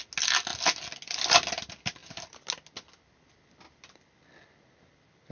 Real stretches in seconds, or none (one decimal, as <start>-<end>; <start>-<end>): 0.0-5.3